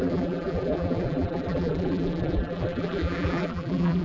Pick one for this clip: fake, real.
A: fake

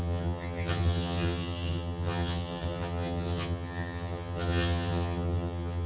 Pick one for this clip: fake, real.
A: fake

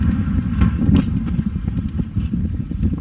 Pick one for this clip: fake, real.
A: real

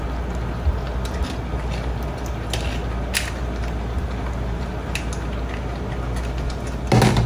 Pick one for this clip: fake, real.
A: real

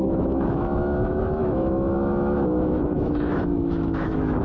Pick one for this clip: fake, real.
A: fake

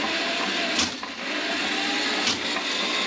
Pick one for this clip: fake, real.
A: real